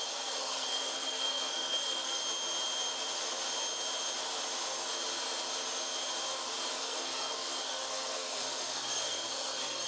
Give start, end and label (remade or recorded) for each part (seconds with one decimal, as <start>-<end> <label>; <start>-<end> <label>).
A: 0.0-2.2 remade; 2.2-6.7 recorded; 6.7-9.9 remade